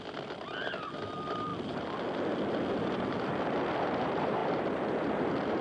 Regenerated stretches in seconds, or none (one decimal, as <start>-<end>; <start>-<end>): none